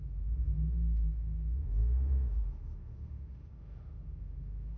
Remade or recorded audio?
remade